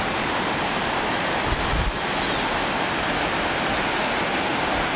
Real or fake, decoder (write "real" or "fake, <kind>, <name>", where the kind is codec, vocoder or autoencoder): real